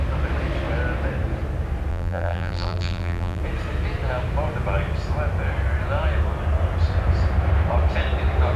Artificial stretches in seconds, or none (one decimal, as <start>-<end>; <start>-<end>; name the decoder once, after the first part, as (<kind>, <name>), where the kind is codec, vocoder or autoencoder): 1.9-3.4 (vocoder, BigVGAN v2)

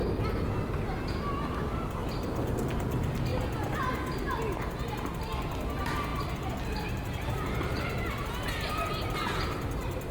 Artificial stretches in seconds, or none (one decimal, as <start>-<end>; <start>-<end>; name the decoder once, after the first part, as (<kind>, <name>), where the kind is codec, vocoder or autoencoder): none

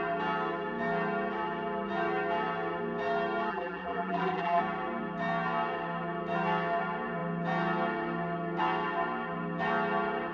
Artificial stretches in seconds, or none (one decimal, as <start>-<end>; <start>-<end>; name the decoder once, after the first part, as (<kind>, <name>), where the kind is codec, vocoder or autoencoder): 3.5-4.6 (vocoder, BigVGAN v2)

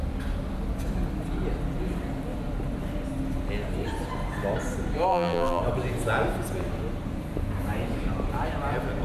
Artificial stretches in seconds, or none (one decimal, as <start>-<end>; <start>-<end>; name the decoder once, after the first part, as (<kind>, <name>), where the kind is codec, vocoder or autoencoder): 5.1-5.6 (vocoder, BigVGAN v2)

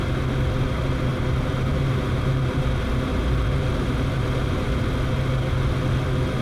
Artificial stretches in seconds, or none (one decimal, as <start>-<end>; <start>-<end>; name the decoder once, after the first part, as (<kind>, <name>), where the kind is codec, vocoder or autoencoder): 1.1-2.6 (vocoder, BigVGAN v2); 3.1-4.7